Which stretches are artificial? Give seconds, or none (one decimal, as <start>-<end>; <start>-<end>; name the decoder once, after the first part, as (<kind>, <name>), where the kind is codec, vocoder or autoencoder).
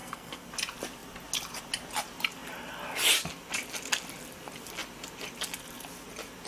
0.0-0.5 (codec, SNAC)